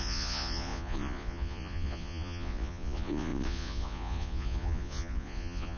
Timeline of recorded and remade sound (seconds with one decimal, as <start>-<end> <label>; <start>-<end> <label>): 0.0-5.8 remade